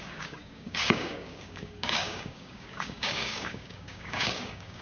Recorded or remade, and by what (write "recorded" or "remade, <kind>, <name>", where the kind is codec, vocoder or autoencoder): remade, codec, DAC